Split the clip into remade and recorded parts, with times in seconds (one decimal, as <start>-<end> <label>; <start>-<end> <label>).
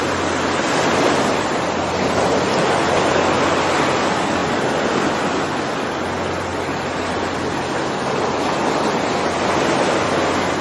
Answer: 0.0-10.6 recorded